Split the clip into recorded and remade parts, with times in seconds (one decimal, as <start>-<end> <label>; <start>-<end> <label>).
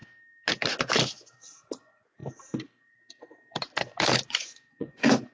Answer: 0.0-1.8 recorded; 1.8-2.2 remade; 2.2-4.3 recorded; 4.3-5.3 remade